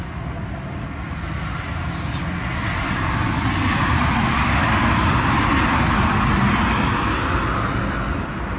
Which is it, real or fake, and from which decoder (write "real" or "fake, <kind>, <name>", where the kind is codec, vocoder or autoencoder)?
real